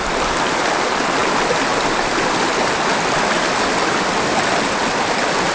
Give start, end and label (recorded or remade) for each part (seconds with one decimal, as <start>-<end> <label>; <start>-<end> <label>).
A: 0.0-5.5 recorded